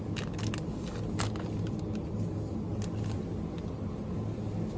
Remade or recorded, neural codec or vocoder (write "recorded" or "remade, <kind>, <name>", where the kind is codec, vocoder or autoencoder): recorded